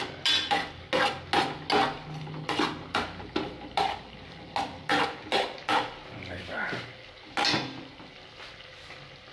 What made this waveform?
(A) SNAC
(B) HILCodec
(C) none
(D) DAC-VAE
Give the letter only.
C